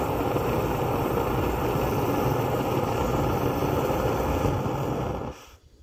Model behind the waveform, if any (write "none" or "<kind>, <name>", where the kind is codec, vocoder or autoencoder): none